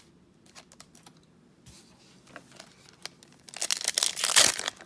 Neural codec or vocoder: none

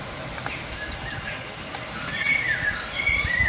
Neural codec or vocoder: none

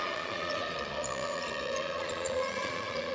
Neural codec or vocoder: vocoder, Vocos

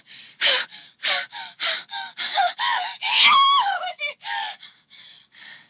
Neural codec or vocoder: codec, DAC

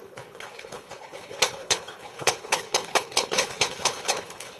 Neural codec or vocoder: codec, HILCodec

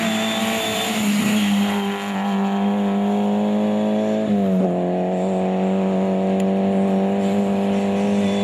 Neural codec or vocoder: none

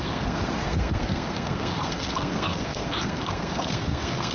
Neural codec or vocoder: codec, SNAC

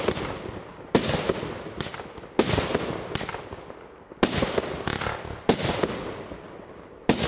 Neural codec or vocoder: none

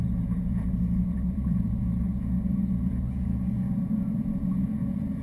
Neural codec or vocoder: vocoder, Vocos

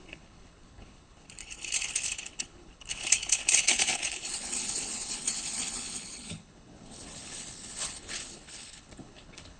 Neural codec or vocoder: codec, HILCodec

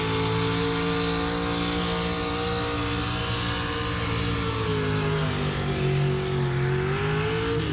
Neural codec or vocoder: none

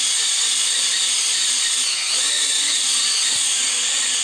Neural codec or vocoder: none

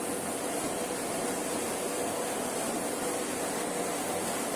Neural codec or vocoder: none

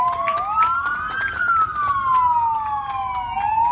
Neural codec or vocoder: none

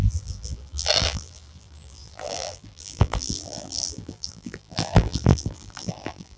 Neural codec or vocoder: vocoder, BigVGAN v2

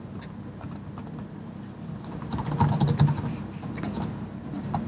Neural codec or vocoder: none